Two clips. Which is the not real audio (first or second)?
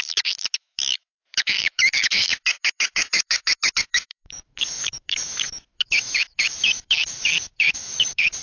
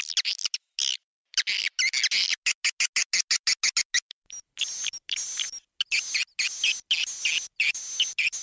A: first